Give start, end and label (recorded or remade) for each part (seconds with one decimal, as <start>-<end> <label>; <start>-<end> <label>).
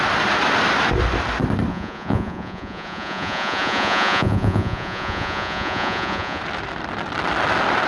0.0-1.7 recorded; 1.7-6.4 remade; 6.4-7.9 recorded